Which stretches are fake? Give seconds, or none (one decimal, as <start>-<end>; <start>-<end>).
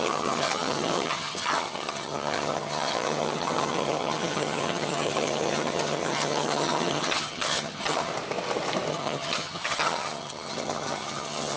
0.0-8.1; 8.9-11.6